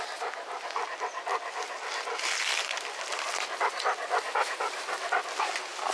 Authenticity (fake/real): real